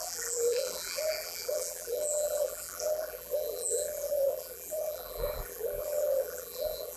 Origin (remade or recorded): remade